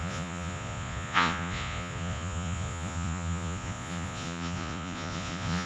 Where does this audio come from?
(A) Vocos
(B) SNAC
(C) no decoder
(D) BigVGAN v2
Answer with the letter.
A